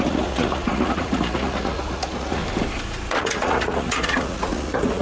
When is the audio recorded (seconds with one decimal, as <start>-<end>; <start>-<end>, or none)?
2.4-3.1